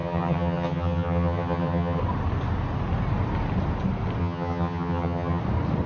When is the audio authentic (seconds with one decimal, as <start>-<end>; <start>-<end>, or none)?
2.0-4.2; 5.4-5.9